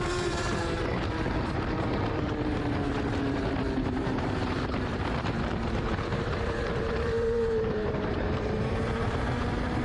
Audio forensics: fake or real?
fake